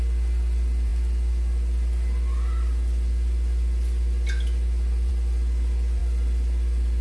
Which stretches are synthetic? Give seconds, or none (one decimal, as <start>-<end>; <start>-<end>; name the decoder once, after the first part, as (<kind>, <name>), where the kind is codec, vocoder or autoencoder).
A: none